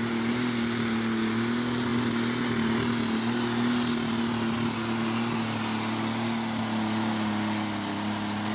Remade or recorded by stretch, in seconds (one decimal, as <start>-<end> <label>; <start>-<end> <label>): 0.0-8.5 recorded